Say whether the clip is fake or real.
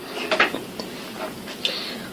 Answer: real